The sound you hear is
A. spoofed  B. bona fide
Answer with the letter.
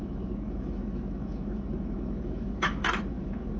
A